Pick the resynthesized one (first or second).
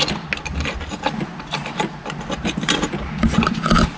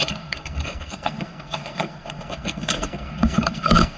second